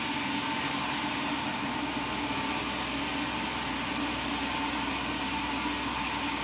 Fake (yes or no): no